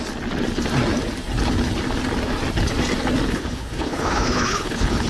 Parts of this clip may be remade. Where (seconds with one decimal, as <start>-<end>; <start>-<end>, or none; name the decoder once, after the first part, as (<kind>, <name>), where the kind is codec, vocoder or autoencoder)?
3.3-5.1 (codec, HILCodec)